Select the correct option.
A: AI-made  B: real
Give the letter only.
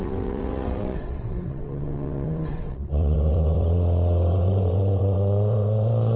A